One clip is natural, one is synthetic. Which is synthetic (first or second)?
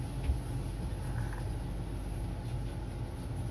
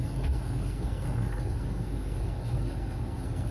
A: second